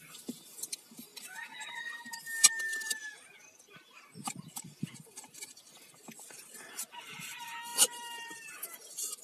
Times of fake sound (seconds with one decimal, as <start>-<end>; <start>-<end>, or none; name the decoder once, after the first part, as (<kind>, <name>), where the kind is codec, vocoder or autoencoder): none